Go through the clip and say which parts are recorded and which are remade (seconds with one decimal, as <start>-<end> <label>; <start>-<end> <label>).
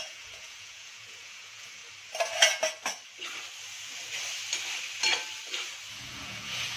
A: 0.0-1.8 remade; 1.8-5.9 recorded; 5.9-6.8 remade